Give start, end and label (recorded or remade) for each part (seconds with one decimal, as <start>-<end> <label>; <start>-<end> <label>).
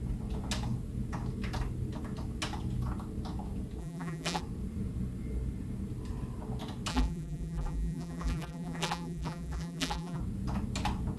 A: 0.0-3.8 recorded; 3.8-4.4 remade; 4.4-6.9 recorded; 6.9-10.2 remade; 10.2-11.2 recorded